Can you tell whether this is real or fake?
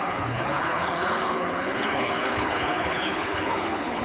fake